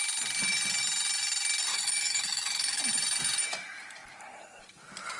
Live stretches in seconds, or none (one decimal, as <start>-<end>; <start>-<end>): 0.0-1.7; 2.8-5.2